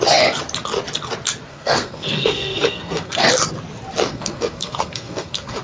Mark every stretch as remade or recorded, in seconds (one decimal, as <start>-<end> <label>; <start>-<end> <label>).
0.0-1.5 recorded; 1.5-3.3 remade; 3.3-4.1 recorded; 4.1-5.6 remade